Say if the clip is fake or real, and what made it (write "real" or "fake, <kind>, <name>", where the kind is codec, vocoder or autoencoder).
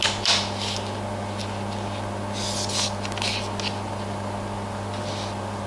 real